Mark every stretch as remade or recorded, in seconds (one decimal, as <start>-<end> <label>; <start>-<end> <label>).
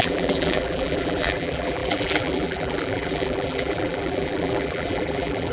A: 0.0-5.5 remade